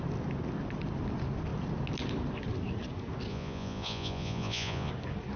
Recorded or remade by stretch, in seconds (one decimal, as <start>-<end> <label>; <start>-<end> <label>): 0.0-3.3 recorded; 3.3-4.9 remade; 4.9-5.4 recorded